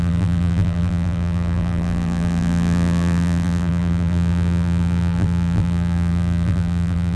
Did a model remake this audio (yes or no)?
yes